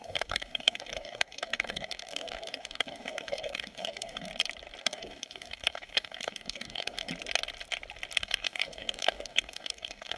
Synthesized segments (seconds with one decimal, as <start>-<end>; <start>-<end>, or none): 0.0-4.3; 4.8-7.1; 8.2-10.2